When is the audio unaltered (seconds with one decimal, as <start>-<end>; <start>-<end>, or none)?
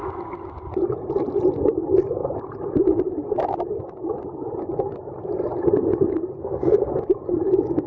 0.0-6.4; 6.9-7.9